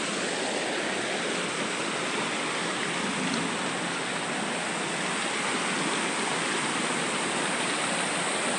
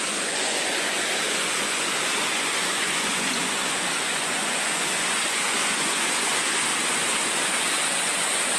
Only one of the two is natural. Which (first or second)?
first